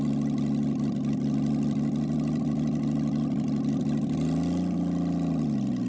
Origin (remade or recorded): recorded